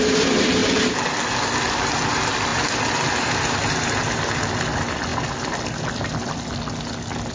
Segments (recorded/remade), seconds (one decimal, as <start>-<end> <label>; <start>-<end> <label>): 0.0-7.3 recorded